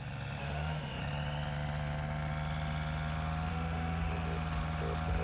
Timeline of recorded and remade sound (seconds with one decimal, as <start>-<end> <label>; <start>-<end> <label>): 0.0-0.4 recorded; 0.4-1.0 remade; 1.0-3.5 recorded; 3.5-4.1 remade; 4.1-5.2 recorded

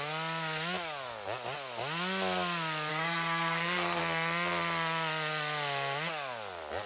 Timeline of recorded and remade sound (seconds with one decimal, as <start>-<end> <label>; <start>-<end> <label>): 0.0-2.9 recorded; 2.9-4.0 remade; 4.0-6.9 recorded

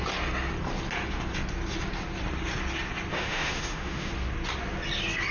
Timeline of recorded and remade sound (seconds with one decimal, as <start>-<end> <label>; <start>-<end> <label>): 0.0-3.1 recorded; 3.1-4.1 remade; 4.1-5.3 recorded

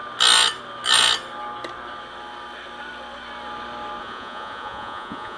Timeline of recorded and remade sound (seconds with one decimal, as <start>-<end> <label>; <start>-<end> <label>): 0.0-4.0 recorded; 4.0-5.4 remade

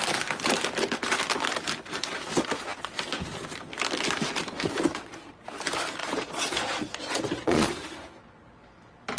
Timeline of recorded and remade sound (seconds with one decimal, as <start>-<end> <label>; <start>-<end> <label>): 0.0-6.0 recorded; 6.0-7.7 remade; 7.7-9.2 recorded

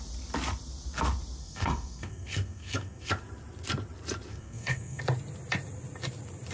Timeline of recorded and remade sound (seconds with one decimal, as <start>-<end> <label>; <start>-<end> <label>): 0.0-1.4 recorded; 1.4-3.1 remade; 3.1-4.3 recorded; 4.3-5.0 remade; 5.0-6.5 recorded